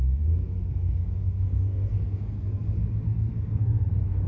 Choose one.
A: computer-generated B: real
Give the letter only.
A